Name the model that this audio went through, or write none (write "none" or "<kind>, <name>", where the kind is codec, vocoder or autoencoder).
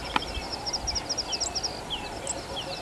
none